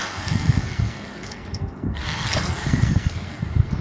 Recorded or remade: remade